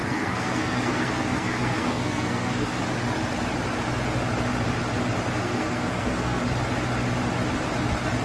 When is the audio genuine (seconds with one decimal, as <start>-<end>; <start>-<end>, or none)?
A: 2.8-5.4; 6.4-8.2